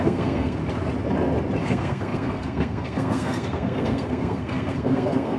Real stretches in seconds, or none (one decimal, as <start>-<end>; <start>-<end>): 0.6-1.6